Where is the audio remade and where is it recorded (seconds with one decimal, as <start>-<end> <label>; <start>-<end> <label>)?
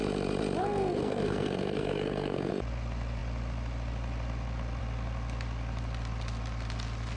0.0-0.6 recorded; 0.6-2.5 remade; 2.5-7.2 recorded